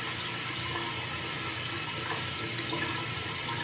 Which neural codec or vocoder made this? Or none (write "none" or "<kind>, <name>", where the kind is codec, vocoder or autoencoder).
none